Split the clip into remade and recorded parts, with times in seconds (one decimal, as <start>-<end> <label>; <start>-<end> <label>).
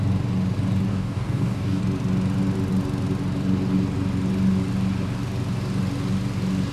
0.0-0.9 recorded; 0.9-1.8 remade; 1.8-6.7 recorded